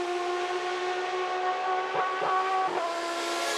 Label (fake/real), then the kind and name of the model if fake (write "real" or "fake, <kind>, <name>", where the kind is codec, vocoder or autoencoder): real